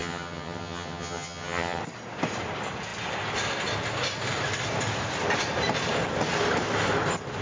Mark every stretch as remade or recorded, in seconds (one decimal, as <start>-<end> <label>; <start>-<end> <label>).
0.0-1.8 remade; 1.8-7.4 recorded